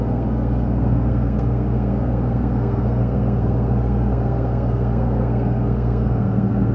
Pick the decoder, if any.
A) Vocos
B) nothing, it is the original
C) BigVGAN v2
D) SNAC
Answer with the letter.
D